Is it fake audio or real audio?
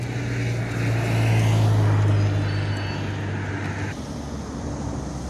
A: real